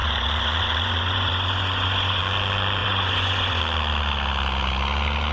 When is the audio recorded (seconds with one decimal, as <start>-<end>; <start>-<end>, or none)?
2.2-2.8; 3.6-5.3